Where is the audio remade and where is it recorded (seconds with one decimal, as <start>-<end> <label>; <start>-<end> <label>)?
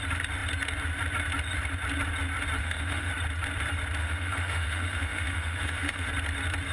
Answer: 0.0-2.6 recorded; 2.6-3.1 remade; 3.1-4.0 recorded; 4.0-6.1 remade; 6.1-6.7 recorded